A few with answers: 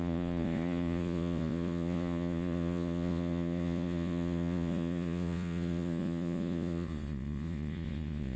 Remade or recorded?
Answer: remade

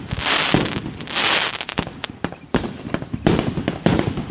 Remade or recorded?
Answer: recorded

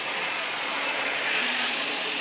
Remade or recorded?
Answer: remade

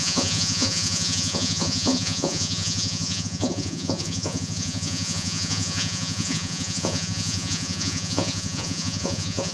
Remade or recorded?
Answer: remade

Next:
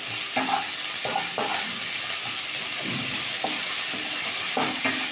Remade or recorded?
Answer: recorded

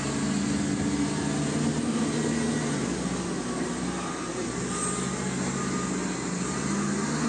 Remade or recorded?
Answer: recorded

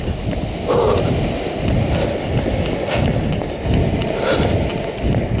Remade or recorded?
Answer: recorded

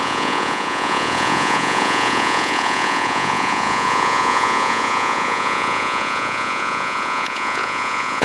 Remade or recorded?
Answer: remade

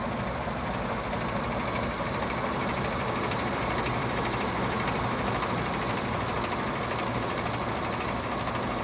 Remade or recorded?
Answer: recorded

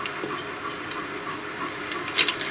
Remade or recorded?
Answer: recorded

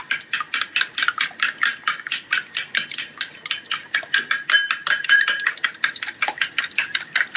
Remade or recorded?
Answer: recorded